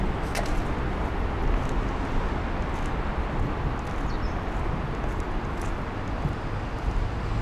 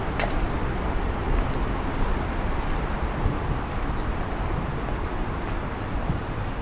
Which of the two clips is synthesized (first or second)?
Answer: second